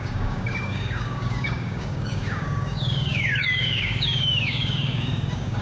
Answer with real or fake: fake